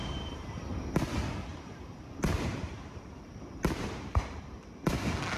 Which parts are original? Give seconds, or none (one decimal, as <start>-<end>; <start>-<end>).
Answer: 0.9-1.5; 4.7-5.4